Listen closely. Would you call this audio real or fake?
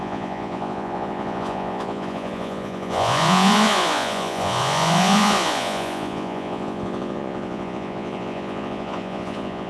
fake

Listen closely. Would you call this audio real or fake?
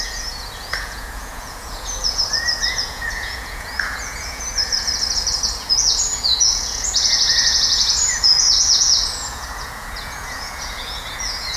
fake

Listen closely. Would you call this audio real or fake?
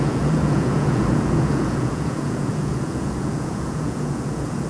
fake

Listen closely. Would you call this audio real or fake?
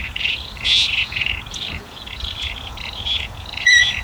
fake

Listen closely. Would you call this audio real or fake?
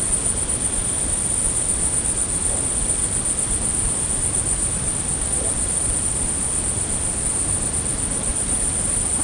real